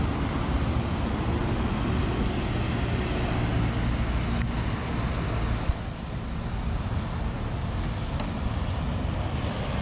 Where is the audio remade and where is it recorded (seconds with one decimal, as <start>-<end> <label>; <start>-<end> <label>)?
0.0-9.8 recorded